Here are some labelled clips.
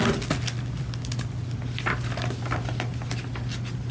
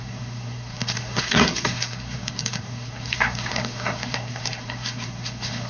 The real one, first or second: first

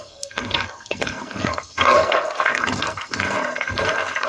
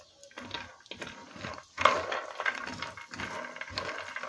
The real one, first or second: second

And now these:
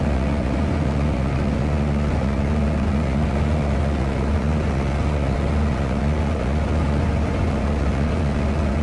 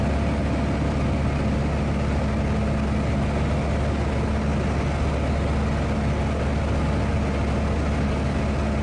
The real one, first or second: second